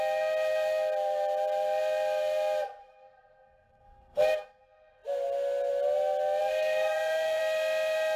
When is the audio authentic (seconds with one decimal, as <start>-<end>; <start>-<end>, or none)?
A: 0.0-2.8; 4.6-6.4; 7.4-8.2